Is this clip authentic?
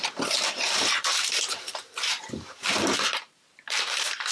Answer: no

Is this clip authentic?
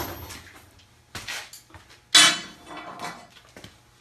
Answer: yes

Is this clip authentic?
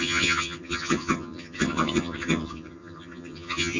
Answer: no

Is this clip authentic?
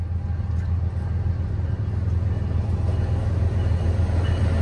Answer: yes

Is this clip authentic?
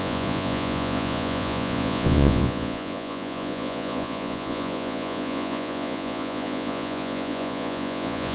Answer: no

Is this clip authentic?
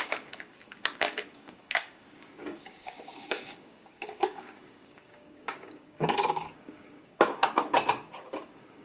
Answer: no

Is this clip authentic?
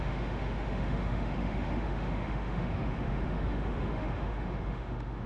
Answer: no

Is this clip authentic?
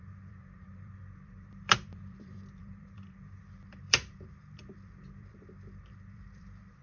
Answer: no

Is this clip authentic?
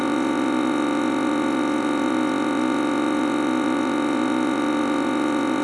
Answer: no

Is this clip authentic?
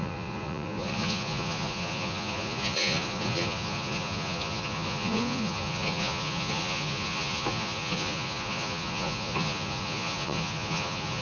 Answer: no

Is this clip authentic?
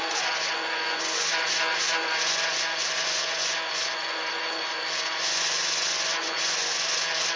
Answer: no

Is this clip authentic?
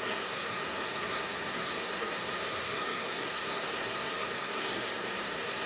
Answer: no